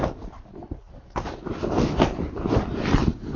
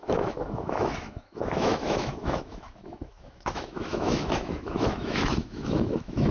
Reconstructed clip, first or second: second